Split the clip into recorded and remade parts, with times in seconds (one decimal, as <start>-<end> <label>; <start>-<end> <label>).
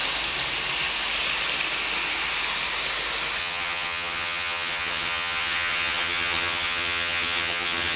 0.0-3.4 recorded; 3.4-8.0 remade